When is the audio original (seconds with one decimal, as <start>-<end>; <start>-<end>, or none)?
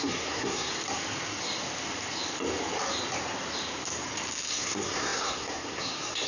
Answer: 0.7-4.5